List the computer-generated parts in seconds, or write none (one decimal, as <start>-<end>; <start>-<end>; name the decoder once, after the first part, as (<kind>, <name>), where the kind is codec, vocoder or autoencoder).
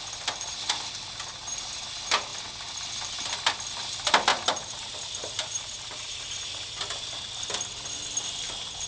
4.3-6.2 (vocoder, BigVGAN v2)